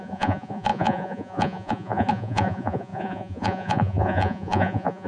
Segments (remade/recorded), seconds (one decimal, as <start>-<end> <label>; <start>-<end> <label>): 0.0-5.1 remade